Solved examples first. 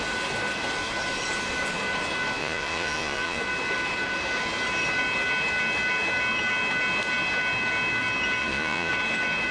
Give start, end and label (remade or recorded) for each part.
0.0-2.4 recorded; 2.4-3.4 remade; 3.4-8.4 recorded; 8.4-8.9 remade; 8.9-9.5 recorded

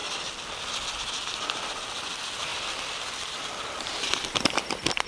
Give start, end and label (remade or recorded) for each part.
0.0-0.9 recorded; 0.9-2.5 remade; 2.5-3.4 recorded; 3.4-5.1 remade

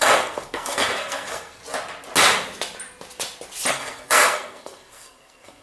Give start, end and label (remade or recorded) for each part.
0.0-1.6 remade; 1.6-3.7 recorded; 3.7-5.6 remade

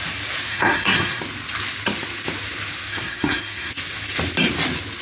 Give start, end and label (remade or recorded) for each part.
0.0-0.5 recorded; 0.5-1.2 remade; 1.2-2.9 recorded; 2.9-3.7 remade; 3.7-5.0 recorded